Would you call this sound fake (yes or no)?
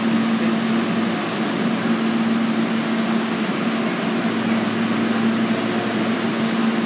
no